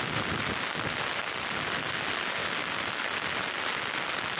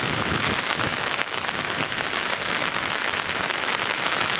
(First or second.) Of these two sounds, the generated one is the second